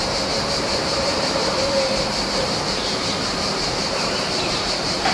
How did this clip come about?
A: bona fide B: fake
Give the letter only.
B